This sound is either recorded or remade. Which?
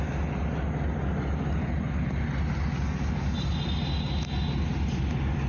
recorded